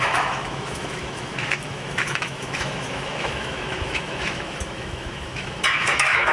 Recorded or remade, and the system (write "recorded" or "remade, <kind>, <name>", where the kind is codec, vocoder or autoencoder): remade, autoencoder, DAC-VAE